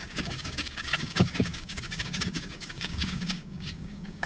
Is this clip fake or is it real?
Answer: fake